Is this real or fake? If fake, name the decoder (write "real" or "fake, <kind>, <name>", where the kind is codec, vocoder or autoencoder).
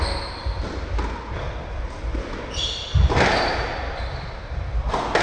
real